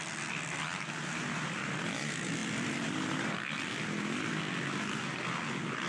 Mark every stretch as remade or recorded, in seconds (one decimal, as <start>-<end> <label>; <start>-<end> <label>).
0.0-5.9 recorded